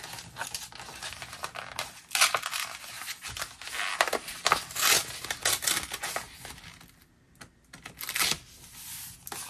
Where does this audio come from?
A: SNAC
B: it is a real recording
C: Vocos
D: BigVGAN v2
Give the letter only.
B